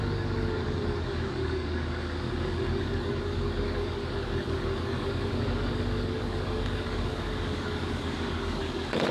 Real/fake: fake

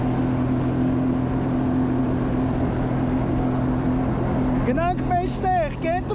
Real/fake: real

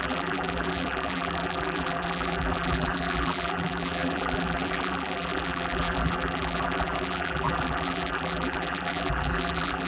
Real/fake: fake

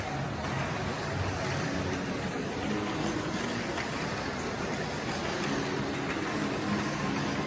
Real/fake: real